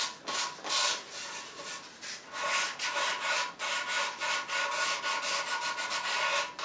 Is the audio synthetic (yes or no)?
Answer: no